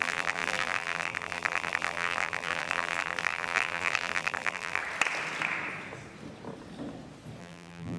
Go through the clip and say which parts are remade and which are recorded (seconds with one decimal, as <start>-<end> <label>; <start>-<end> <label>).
0.0-4.8 remade; 4.8-7.4 recorded; 7.4-8.0 remade